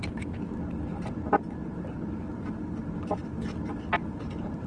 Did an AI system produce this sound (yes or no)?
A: no